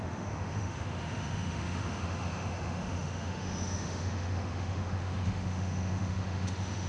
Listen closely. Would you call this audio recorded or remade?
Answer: remade